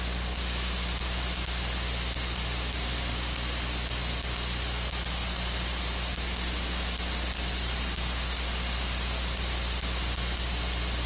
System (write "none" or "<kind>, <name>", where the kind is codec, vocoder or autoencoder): none